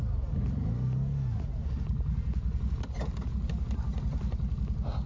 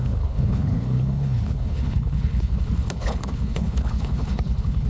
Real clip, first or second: first